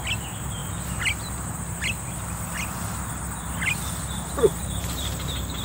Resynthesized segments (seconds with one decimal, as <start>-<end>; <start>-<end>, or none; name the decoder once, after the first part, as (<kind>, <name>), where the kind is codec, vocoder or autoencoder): 4.5-5.6 (vocoder, BigVGAN v2)